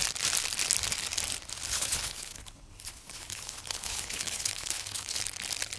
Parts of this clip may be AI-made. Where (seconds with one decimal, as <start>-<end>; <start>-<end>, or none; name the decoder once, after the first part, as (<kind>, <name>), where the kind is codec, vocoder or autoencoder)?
1.7-5.2 (codec, HILCodec)